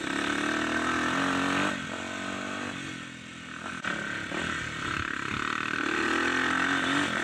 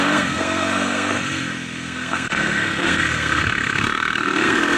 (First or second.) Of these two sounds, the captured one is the first